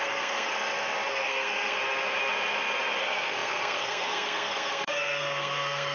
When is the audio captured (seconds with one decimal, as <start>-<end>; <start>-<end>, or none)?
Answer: 0.5-1.1; 1.8-3.0